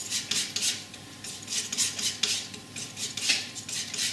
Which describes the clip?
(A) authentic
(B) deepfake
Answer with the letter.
A